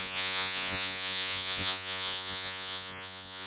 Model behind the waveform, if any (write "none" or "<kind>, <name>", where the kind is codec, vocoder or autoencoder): vocoder, Vocos